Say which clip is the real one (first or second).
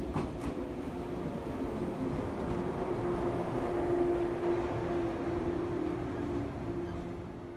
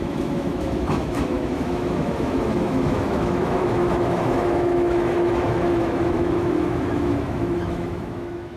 first